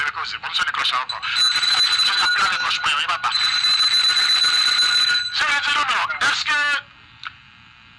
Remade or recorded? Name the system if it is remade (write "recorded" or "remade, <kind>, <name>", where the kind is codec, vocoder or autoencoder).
recorded